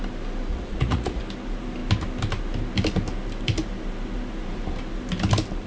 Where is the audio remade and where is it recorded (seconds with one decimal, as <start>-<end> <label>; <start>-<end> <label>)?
0.0-0.5 recorded; 0.5-1.2 remade; 1.2-5.7 recorded